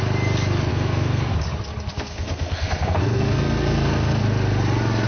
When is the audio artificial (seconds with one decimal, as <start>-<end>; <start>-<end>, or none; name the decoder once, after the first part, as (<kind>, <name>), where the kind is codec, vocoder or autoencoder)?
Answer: 0.7-1.3 (codec, SNAC); 1.9-4.2